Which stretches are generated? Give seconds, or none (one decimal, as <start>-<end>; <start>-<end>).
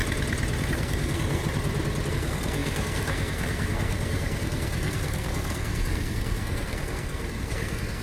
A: 0.7-1.4; 2.1-8.0